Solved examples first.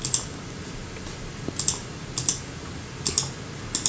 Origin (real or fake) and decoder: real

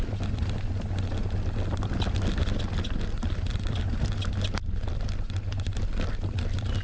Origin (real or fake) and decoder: real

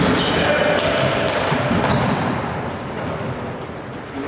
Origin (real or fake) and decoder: real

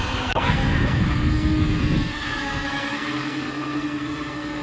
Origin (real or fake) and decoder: fake, codec, SNAC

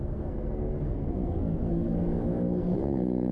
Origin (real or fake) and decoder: fake, codec, SNAC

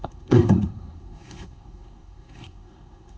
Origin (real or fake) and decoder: fake, codec, SNAC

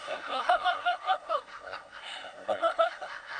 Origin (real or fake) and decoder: fake, codec, SNAC